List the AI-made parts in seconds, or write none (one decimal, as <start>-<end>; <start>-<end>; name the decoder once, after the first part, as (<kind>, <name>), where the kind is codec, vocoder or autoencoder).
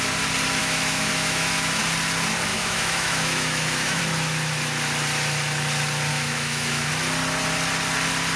0.6-1.8 (autoencoder, DAC-VAE); 2.5-4.0; 6.1-6.9